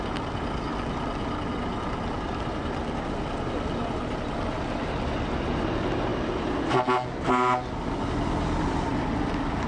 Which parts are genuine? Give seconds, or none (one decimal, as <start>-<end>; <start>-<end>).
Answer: 0.0-9.7